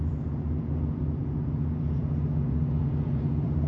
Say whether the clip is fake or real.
fake